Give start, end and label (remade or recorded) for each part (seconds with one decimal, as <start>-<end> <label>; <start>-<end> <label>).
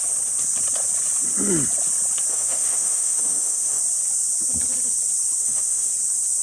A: 0.0-2.3 recorded; 2.3-3.8 remade; 3.8-5.4 recorded; 5.4-5.9 remade; 5.9-6.4 recorded